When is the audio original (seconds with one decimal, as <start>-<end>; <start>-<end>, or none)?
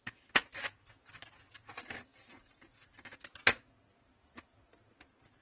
0.0-5.4